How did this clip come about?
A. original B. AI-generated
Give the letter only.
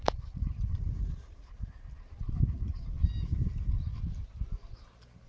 A